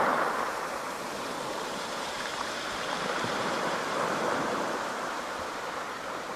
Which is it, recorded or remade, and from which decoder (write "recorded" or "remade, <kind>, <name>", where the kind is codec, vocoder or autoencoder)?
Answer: remade, vocoder, BigVGAN v2